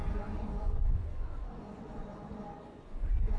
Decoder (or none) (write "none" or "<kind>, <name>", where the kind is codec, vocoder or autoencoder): vocoder, Vocos